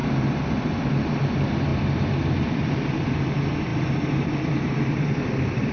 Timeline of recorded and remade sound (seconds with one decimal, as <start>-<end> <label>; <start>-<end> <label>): 0.0-1.7 recorded; 1.7-3.1 remade; 3.1-3.7 recorded; 3.7-5.2 remade; 5.2-5.7 recorded